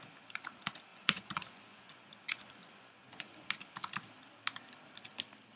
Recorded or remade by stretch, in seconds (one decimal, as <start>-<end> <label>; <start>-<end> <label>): 0.0-0.9 recorded; 0.9-3.5 remade; 3.5-5.6 recorded